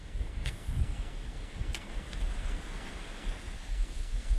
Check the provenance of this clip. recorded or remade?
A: remade